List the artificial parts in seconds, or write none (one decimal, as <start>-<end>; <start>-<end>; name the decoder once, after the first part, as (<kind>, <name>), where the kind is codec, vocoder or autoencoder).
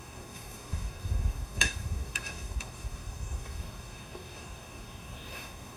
0.0-5.8 (codec, DAC)